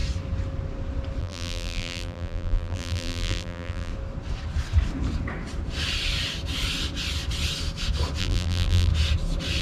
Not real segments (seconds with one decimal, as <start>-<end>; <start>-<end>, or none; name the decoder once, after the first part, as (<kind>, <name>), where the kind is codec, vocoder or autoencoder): 1.2-3.9 (vocoder, BigVGAN v2); 8.2-8.9